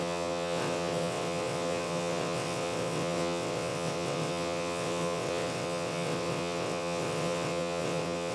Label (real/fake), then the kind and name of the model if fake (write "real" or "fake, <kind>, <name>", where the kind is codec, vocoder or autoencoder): fake, vocoder, WaveNeXt